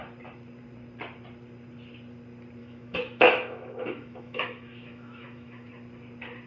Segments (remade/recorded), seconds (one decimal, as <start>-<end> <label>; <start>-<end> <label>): 0.0-2.6 recorded; 2.6-5.7 remade; 5.7-6.5 recorded